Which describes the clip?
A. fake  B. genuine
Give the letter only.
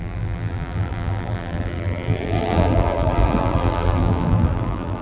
A